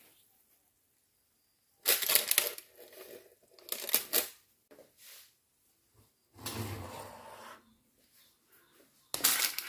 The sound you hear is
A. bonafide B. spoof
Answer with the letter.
A